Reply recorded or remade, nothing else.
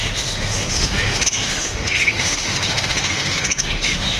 remade